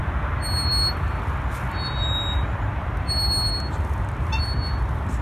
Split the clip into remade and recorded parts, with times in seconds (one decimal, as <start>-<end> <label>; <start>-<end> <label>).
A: 0.0-5.2 recorded